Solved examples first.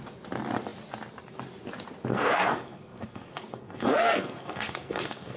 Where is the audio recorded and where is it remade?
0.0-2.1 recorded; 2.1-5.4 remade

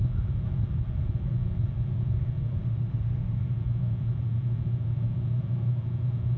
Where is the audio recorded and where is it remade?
0.0-2.6 recorded; 2.6-3.4 remade; 3.4-6.4 recorded

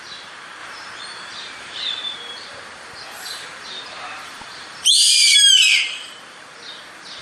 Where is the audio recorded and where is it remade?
0.0-7.2 remade

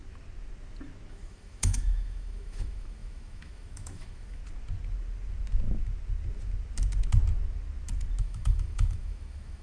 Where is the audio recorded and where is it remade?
0.0-1.1 recorded; 1.1-4.4 remade; 4.4-8.2 recorded; 8.2-9.6 remade

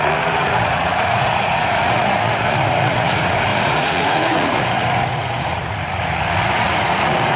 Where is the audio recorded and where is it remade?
0.0-7.4 remade

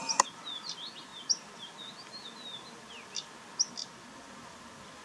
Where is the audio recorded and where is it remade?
0.0-5.0 recorded

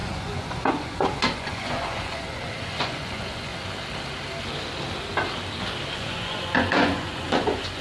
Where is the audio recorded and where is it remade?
0.0-3.5 remade; 3.5-5.9 recorded; 5.9-7.8 remade